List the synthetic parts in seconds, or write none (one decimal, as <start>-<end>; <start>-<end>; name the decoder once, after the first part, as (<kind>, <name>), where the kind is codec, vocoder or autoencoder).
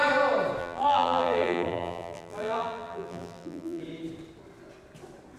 0.6-3.8 (vocoder, BigVGAN v2)